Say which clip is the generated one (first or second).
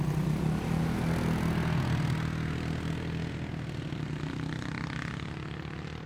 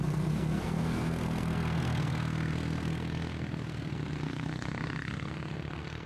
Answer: second